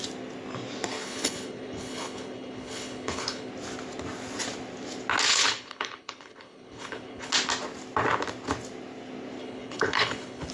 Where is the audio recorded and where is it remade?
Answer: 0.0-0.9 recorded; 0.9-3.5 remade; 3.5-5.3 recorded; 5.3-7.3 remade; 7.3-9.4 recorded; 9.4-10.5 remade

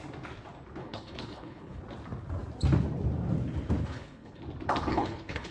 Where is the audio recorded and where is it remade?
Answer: 0.0-0.8 recorded; 0.8-1.8 remade; 1.8-3.8 recorded; 3.8-4.4 remade; 4.4-4.9 recorded; 4.9-5.5 remade

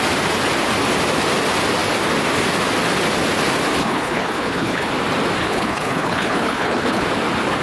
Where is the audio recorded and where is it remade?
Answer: 0.0-3.8 recorded; 3.8-4.9 remade; 4.9-5.4 recorded; 5.4-7.0 remade; 7.0-7.6 recorded

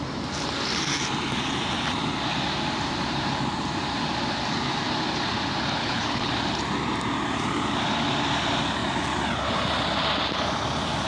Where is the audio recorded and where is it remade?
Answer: 0.0-5.8 recorded; 5.8-6.3 remade; 6.3-11.1 recorded

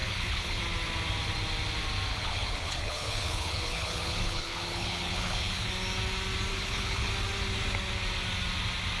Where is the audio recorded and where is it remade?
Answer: 0.0-0.6 remade; 0.6-2.1 recorded; 2.1-5.7 remade; 5.7-6.5 recorded; 6.5-7.1 remade; 7.1-9.0 recorded

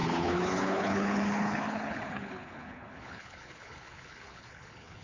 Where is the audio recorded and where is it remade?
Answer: 0.0-5.0 remade